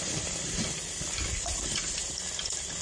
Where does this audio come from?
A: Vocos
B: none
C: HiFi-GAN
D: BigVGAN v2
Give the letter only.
B